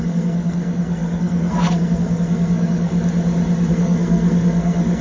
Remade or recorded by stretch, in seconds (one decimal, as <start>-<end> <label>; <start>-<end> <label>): 0.0-2.9 remade; 2.9-3.7 recorded; 3.7-5.0 remade